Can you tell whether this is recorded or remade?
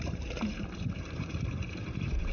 remade